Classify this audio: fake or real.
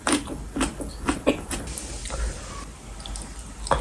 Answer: real